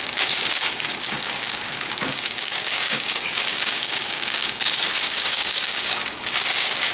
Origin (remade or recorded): remade